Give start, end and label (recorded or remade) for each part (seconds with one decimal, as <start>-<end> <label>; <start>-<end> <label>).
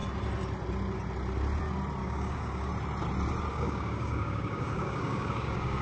0.0-2.0 recorded; 2.0-2.7 remade; 2.7-3.5 recorded; 3.5-5.8 remade